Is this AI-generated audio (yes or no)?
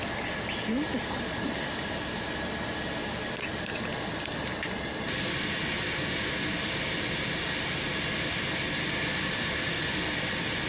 no